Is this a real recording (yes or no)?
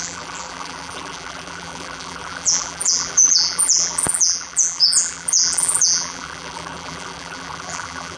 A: no